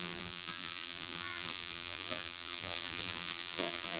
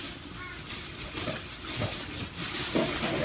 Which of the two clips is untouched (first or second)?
second